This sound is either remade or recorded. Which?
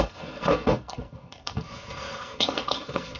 remade